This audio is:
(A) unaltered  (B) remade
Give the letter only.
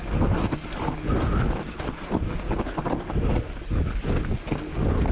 A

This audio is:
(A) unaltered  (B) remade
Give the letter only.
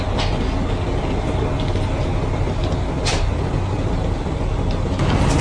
A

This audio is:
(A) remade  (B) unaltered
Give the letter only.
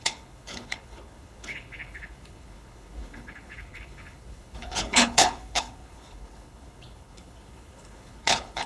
A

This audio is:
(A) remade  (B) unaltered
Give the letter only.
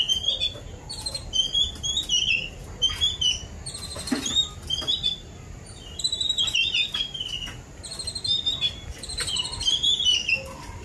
B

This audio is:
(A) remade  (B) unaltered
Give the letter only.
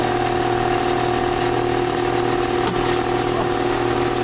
B